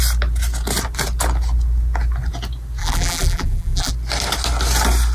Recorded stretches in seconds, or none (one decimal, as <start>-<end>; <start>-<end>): 0.0-2.8; 3.9-5.1